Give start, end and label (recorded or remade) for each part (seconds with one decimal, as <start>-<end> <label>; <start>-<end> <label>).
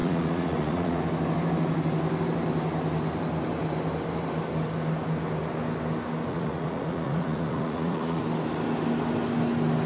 0.0-1.0 remade; 1.0-6.3 recorded; 6.3-8.2 remade; 8.2-9.9 recorded